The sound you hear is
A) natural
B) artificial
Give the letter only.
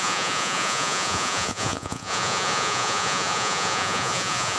B